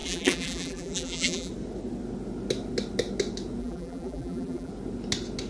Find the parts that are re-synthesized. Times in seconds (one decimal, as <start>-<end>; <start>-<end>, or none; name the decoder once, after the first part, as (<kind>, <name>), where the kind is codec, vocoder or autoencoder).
0.0-1.5 (vocoder, BigVGAN v2); 3.6-4.7